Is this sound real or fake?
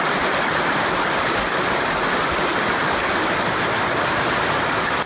real